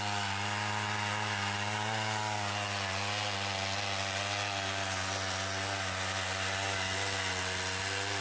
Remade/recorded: recorded